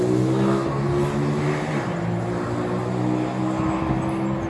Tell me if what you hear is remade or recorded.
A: recorded